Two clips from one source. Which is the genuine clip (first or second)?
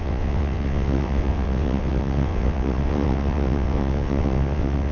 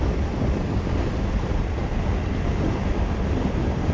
second